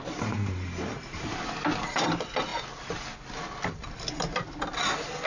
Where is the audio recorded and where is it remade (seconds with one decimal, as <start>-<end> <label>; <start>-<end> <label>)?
0.0-5.3 recorded

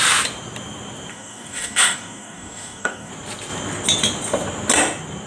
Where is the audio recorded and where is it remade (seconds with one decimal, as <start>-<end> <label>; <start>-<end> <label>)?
0.0-1.1 recorded; 1.1-3.1 remade; 3.1-5.3 recorded